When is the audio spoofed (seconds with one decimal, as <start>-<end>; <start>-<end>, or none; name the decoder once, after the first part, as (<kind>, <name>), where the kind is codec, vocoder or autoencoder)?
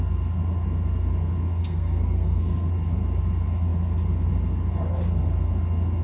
1.6-2.7 (codec, SNAC)